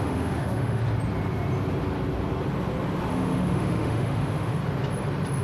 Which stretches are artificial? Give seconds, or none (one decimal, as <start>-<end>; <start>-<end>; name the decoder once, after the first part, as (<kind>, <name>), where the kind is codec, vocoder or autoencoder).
0.0-0.8 (autoencoder, DAC-VAE); 3.1-4.6